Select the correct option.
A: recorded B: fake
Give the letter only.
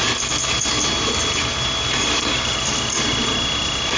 A